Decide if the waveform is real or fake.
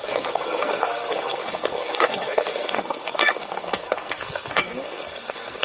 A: fake